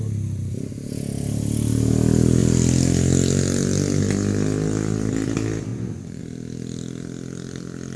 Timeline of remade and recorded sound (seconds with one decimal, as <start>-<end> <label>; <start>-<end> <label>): 0.0-5.7 recorded; 5.7-6.2 remade; 6.2-8.0 recorded